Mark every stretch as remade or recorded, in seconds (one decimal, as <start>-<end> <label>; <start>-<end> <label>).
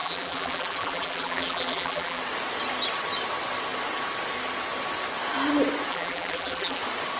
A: 0.0-2.2 remade; 2.2-5.9 recorded; 5.9-6.8 remade; 6.8-7.2 recorded